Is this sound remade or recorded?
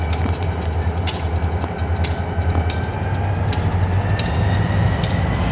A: recorded